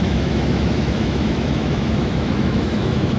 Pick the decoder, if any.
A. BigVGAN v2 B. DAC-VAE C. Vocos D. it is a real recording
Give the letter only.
B